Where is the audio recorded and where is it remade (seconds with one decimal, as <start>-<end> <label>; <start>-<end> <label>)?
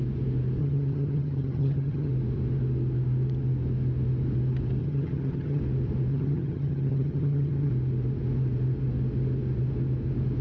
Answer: 0.0-0.6 recorded; 0.6-2.1 remade; 2.1-4.8 recorded; 4.8-5.6 remade; 5.6-6.1 recorded; 6.1-7.7 remade; 7.7-10.4 recorded